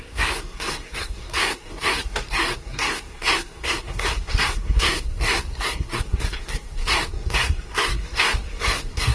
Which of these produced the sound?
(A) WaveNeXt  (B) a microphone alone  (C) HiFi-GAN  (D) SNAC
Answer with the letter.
D